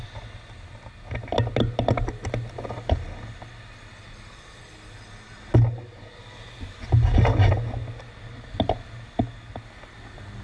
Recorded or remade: recorded